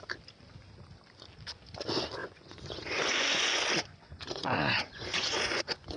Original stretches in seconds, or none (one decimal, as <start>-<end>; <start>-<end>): 0.0-2.2